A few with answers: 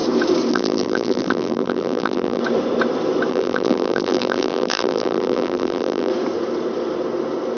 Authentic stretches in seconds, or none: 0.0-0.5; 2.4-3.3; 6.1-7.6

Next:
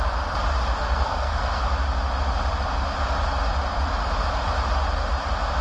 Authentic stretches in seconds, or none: 0.0-0.8; 1.6-5.6

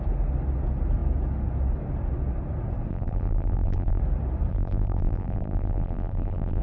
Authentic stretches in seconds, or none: 0.0-2.9; 4.0-4.5

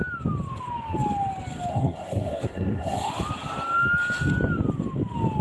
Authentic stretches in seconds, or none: 0.0-1.7; 3.1-5.4